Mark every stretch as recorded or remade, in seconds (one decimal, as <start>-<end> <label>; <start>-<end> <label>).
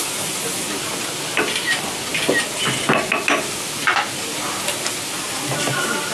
0.0-6.1 recorded